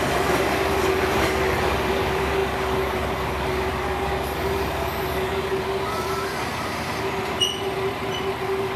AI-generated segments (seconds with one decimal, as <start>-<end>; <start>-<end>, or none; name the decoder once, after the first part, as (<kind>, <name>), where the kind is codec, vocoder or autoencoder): 0.0-6.3 (codec, DAC); 8.4-8.8